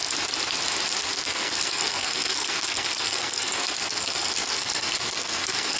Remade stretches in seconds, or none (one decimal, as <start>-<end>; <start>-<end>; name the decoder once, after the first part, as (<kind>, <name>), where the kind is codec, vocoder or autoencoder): 1.0-5.8 (codec, SNAC)

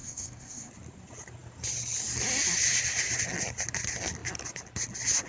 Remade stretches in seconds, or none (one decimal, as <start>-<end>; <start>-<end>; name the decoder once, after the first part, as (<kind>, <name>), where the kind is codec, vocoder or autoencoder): 0.0-0.7 (codec, SNAC)